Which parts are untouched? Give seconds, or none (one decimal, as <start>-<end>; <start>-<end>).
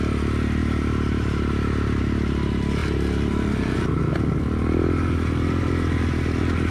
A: 0.0-0.6; 2.0-6.7